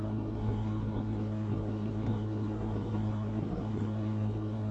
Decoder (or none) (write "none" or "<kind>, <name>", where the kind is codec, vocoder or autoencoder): codec, SNAC